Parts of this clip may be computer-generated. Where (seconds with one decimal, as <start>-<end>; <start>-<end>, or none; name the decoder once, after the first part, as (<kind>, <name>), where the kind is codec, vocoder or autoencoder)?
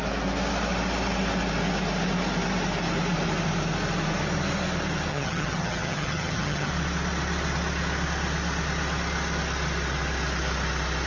5.1-6.7 (vocoder, HiFi-GAN)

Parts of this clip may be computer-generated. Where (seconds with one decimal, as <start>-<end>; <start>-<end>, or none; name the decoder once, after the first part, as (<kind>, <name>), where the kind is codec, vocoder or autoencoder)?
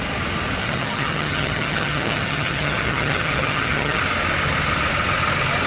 0.6-4.0 (vocoder, HiFi-GAN)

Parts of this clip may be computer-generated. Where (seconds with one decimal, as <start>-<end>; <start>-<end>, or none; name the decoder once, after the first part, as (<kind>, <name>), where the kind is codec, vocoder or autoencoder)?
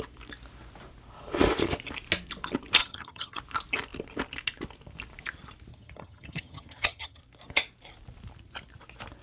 2.8-3.4 (vocoder, HiFi-GAN); 5.7-7.2